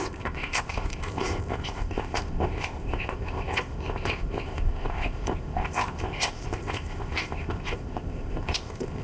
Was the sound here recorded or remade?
remade